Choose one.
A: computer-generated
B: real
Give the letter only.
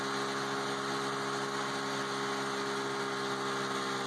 B